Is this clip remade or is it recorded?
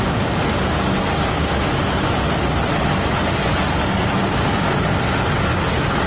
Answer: recorded